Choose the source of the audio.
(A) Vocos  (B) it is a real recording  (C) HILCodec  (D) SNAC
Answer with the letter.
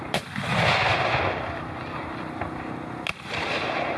B